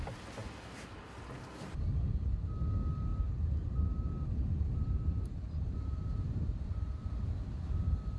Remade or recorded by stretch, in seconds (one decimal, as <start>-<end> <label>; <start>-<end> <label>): 0.0-3.1 recorded; 3.1-8.2 remade